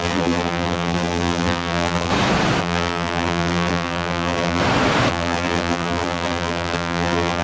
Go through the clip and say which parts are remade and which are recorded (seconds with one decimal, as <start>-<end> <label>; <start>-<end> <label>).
0.0-2.1 remade; 2.1-2.6 recorded; 2.6-4.6 remade; 4.6-5.1 recorded; 5.1-7.4 remade